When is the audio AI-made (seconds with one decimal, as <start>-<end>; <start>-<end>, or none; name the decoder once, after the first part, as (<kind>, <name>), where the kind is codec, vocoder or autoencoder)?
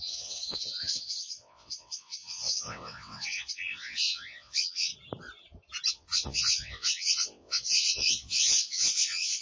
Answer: 0.0-4.9 (vocoder, WaveNeXt); 5.9-9.4